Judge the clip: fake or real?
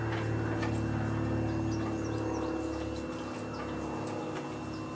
real